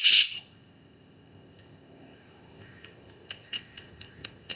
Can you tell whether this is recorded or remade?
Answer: remade